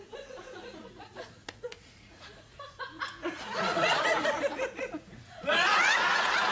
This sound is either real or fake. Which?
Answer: fake